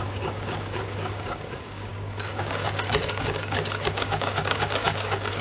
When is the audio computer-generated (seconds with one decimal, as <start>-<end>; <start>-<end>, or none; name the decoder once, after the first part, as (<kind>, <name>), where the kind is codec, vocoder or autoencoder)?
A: 0.0-5.4 (codec, DAC)